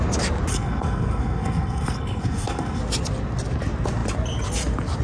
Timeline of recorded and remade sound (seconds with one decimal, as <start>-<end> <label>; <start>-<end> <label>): 0.0-0.5 recorded; 0.5-2.8 remade; 2.8-5.0 recorded